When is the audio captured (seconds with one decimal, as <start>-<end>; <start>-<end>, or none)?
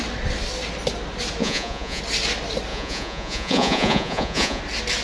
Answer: 0.0-1.4; 2.0-2.7; 4.6-5.0